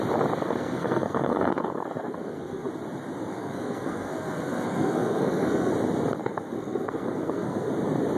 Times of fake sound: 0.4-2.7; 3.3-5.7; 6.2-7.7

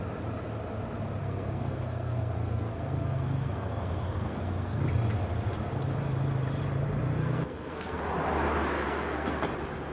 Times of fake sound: 1.2-4.8; 7.2-8.0; 8.8-9.4

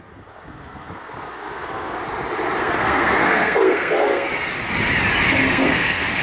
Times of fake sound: 0.0-2.0; 2.6-4.3; 5.3-6.2

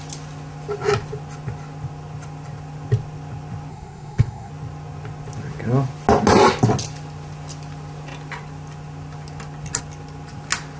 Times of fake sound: 3.7-4.5

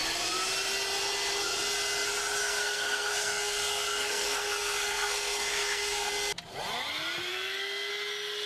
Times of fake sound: 2.4-6.1; 7.3-7.9

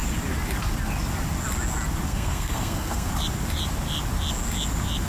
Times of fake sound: 2.1-3.1